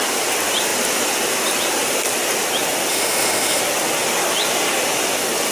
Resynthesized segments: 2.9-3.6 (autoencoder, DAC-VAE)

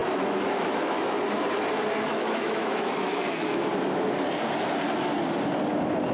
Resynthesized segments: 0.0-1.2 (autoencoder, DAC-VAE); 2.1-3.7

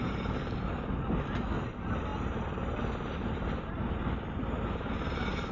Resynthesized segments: none

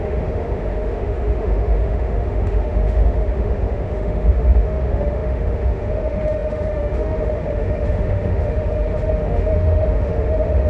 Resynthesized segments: 0.0-10.7 (autoencoder, DAC-VAE)